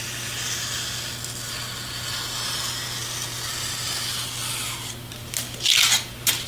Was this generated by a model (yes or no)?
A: no